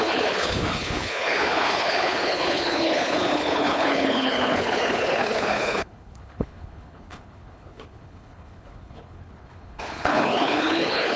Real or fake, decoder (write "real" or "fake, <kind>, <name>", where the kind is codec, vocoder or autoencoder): fake, codec, HILCodec